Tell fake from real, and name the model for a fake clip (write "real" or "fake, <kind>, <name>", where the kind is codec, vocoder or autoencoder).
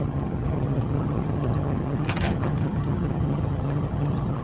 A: fake, vocoder, HiFi-GAN